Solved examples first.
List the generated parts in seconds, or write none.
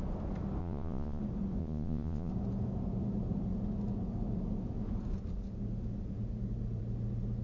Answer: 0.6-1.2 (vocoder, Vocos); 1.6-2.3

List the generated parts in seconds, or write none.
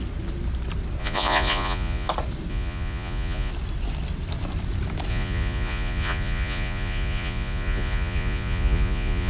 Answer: 1.0-2.1 (vocoder, Vocos); 2.5-3.5; 5.1-9.3